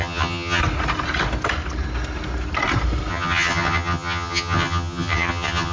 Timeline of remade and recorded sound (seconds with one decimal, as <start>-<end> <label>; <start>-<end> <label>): 0.0-0.6 remade; 0.6-3.1 recorded; 3.1-5.7 remade